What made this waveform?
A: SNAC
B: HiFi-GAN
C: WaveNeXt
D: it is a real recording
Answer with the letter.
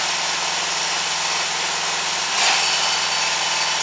D